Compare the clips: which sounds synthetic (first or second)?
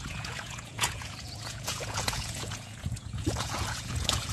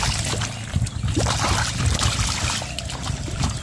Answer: first